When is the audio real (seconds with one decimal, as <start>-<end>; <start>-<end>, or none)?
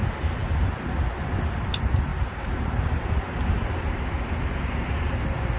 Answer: 0.0-2.1; 4.9-5.6